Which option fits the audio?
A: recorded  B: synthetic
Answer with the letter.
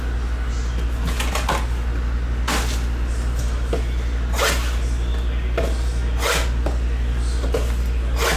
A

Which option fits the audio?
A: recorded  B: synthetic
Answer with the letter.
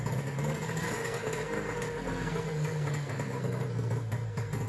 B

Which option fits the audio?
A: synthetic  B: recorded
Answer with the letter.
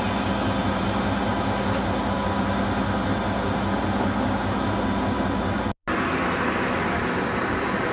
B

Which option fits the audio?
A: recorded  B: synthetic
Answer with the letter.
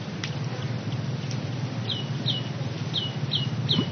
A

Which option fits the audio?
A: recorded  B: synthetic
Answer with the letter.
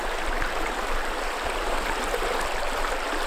B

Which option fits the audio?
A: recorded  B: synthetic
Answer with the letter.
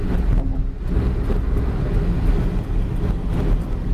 A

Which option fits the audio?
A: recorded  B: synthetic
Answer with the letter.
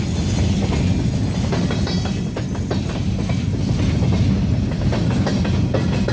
A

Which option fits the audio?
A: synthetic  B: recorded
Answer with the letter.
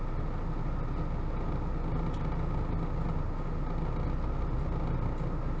B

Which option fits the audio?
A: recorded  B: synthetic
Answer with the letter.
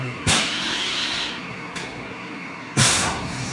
B